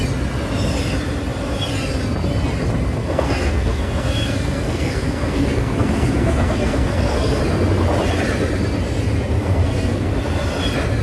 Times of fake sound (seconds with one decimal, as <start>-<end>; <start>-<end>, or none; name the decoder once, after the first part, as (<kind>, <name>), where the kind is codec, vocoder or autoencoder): 3.0-7.4 (codec, SNAC); 9.4-10.1